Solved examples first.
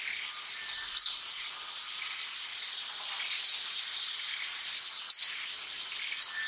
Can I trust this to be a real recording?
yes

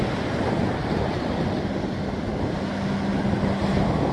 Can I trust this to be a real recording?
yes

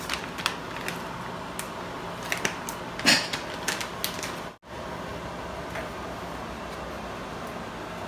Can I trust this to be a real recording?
yes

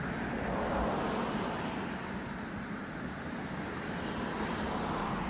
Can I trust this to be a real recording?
yes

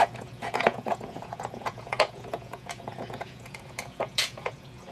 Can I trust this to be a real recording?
no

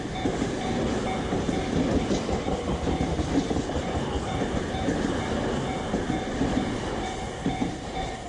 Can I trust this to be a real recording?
yes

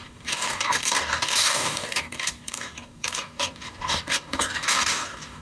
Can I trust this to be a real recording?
no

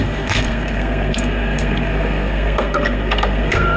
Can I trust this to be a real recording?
no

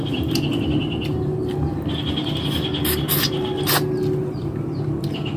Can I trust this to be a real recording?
yes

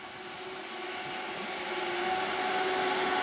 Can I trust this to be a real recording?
yes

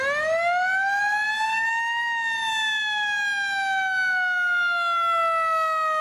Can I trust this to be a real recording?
yes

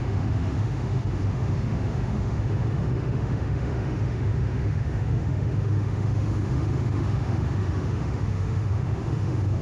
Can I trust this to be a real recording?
no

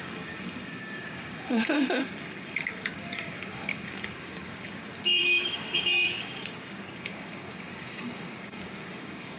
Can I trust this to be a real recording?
no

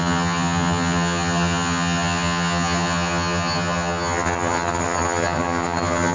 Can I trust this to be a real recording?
no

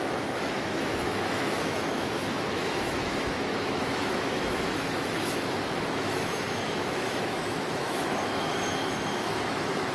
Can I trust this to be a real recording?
no